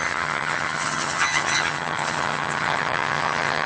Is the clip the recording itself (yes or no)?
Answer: no